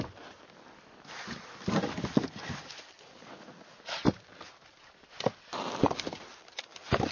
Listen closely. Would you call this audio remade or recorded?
recorded